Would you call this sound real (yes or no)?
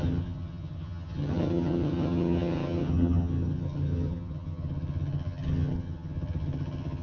no